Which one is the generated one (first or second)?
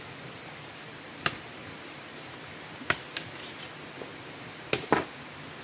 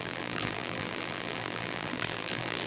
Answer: second